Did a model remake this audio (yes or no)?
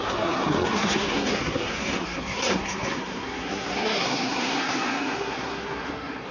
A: yes